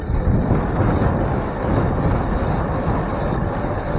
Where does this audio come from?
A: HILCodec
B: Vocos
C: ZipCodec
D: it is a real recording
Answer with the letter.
D